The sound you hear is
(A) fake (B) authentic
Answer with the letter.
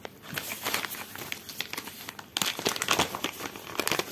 B